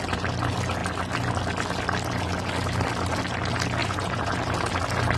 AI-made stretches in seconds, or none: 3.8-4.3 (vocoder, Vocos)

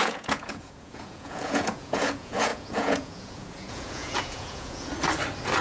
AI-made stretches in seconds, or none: 0.0-4.9 (vocoder, Vocos)